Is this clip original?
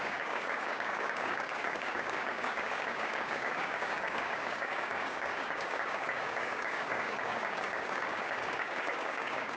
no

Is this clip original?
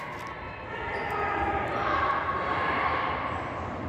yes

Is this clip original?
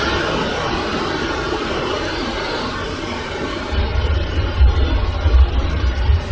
no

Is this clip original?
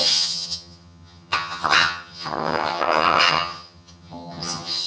no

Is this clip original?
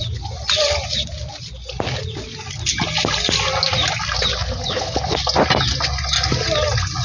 yes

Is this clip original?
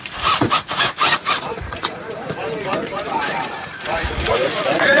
no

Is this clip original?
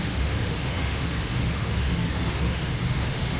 no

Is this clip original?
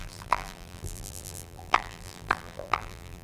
no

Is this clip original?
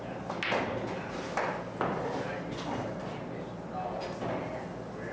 yes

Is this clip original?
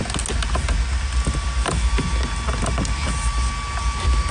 yes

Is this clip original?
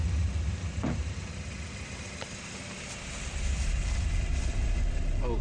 yes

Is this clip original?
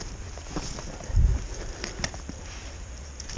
yes